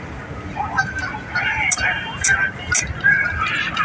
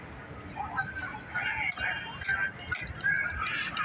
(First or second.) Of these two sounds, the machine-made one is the first